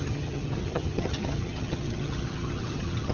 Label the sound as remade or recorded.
remade